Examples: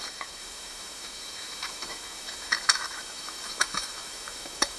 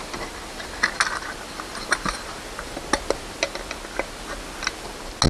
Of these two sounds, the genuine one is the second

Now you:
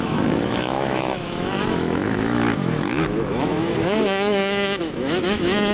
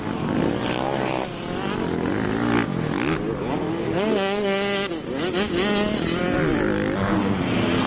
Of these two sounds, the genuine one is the second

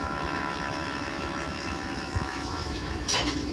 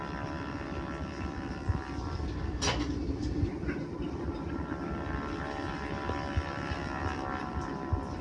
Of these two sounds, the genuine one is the second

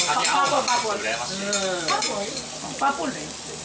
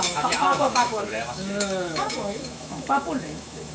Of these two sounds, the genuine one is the first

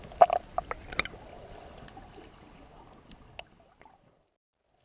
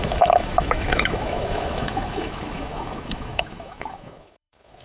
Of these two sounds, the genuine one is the first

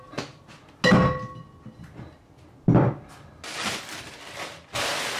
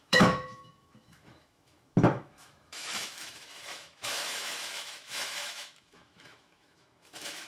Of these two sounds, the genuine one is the first